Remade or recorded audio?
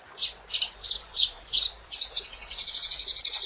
remade